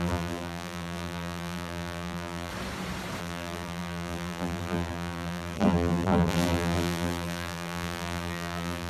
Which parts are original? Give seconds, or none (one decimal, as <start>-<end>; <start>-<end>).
2.5-3.2